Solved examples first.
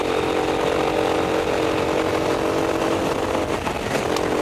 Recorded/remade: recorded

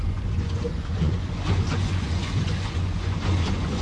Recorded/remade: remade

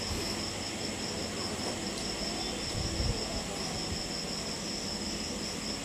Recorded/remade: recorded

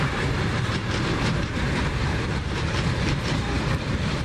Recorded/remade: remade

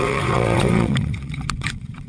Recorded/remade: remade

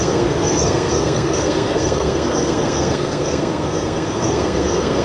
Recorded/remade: remade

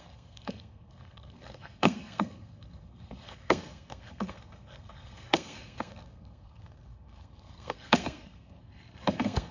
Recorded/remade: remade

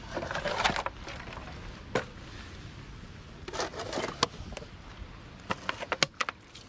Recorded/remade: recorded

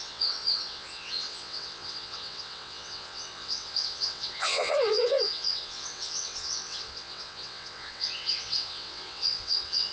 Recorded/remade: remade